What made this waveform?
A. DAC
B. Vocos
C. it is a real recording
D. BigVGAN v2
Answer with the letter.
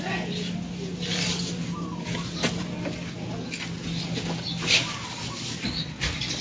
C